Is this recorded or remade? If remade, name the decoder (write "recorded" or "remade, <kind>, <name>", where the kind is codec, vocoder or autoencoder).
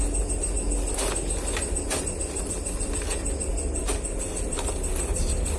recorded